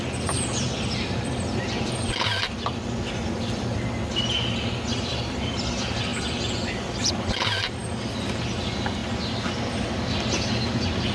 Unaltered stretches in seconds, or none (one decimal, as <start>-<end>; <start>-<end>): 0.0-11.1